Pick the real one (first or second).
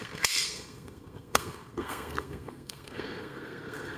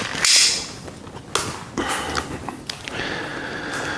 second